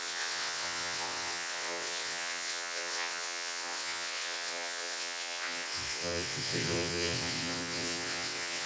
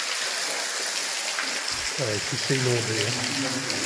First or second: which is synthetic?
first